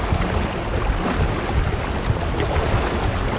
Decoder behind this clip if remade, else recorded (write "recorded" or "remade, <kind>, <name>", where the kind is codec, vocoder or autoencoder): recorded